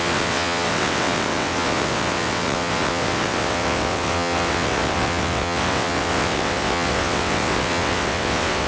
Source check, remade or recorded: remade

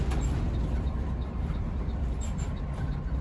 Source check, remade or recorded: recorded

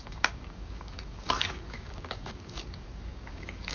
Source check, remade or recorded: remade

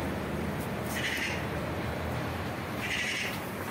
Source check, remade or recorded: remade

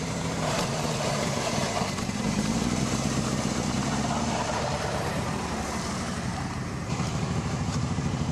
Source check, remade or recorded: remade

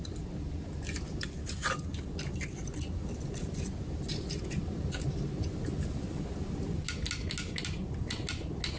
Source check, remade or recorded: recorded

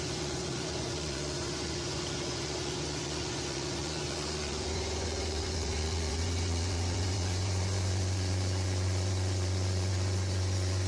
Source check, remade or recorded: remade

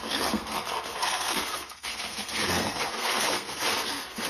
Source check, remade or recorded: remade